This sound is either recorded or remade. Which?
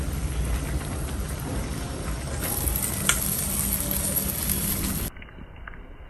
recorded